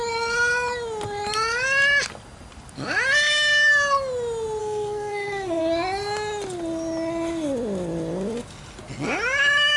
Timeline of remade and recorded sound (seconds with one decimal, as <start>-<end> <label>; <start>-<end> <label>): 0.0-4.6 recorded; 4.6-5.6 remade; 5.6-9.8 recorded